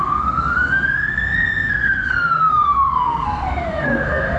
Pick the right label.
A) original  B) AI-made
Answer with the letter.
B